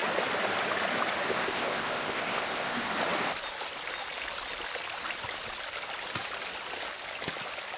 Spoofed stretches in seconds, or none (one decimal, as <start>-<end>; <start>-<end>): 1.3-2.9